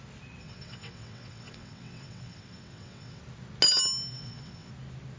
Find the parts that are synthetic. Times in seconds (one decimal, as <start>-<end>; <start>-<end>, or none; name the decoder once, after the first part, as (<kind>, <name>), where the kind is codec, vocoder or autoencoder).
0.4-3.2 (vocoder, WaveNeXt); 4.1-4.7